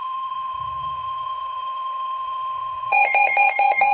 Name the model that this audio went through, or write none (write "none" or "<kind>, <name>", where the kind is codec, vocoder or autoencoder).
vocoder, Vocos